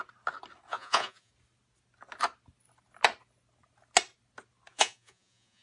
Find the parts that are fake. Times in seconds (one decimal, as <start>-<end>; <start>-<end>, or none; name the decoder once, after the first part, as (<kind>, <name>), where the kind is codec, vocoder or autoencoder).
0.7-1.3 (vocoder, Vocos); 4.7-5.6